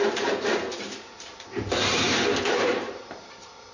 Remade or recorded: remade